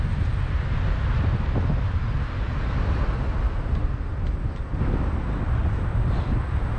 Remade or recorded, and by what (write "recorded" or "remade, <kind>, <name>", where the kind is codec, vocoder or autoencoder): recorded